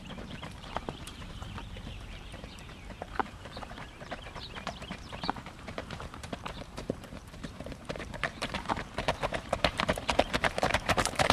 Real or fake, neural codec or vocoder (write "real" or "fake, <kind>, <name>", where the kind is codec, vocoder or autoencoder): fake, vocoder, BigVGAN v2